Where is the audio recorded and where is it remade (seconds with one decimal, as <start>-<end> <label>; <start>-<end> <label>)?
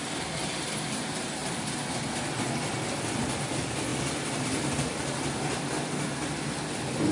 0.0-7.1 recorded